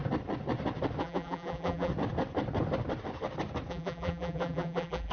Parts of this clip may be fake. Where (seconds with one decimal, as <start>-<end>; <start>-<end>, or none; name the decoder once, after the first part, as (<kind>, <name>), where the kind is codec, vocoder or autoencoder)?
1.0-1.9 (vocoder, BigVGAN v2); 3.7-5.1